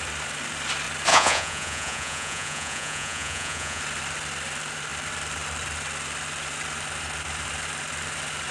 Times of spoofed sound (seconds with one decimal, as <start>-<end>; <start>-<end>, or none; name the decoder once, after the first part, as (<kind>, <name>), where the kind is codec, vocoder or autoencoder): 1.1-3.8 (vocoder, Vocos)